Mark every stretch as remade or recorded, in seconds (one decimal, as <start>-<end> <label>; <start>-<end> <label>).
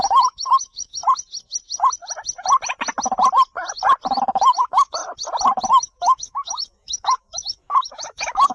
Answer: 0.0-1.0 remade; 1.0-4.2 recorded; 4.2-5.0 remade; 5.0-5.7 recorded; 5.7-8.5 remade